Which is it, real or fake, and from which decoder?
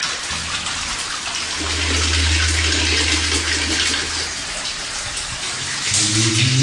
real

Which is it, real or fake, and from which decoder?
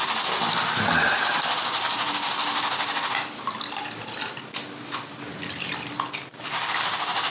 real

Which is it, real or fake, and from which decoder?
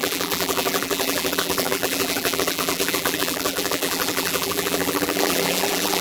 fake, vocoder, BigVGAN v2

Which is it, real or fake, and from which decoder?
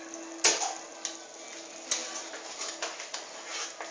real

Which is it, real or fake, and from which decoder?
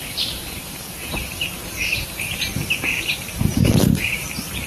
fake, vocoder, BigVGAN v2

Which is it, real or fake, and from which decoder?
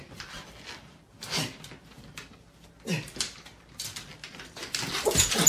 real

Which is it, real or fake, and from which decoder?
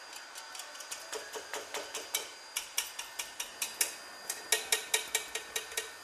real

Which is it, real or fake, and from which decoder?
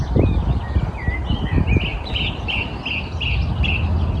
real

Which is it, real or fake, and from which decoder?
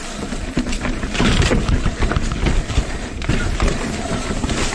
fake, vocoder, BigVGAN v2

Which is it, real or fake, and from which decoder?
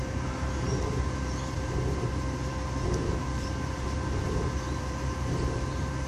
fake, vocoder, BigVGAN v2